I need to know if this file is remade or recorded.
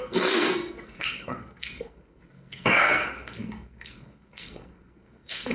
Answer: remade